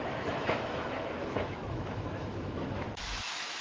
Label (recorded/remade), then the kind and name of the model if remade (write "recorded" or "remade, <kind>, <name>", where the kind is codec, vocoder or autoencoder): remade, autoencoder, DAC-VAE